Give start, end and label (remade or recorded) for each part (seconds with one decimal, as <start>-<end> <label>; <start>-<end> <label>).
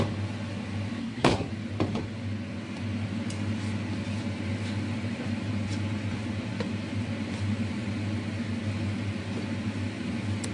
0.0-1.0 recorded; 1.0-1.5 remade; 1.5-10.5 recorded